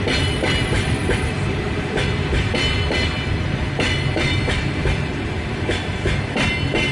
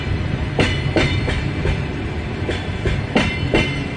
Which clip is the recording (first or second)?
first